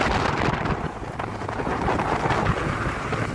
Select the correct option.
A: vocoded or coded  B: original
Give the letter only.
B